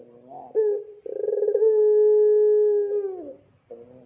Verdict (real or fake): real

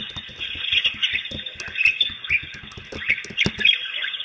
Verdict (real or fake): real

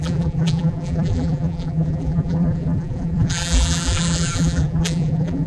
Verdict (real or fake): fake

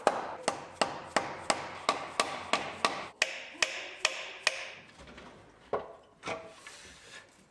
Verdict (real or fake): real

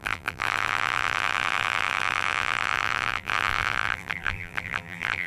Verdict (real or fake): fake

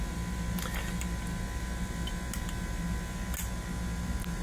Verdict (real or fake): real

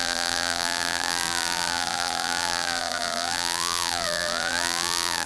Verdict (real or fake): fake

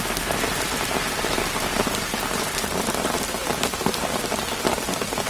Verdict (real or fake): real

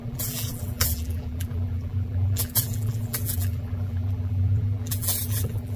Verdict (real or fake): fake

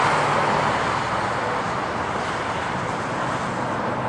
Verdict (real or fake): real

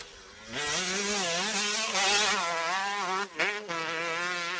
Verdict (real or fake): real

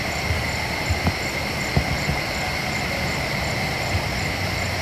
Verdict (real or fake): fake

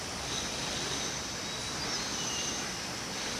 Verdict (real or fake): real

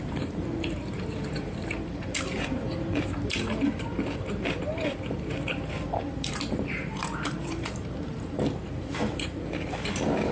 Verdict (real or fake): fake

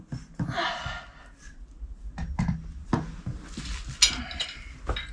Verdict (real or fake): real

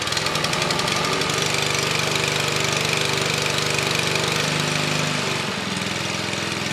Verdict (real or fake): real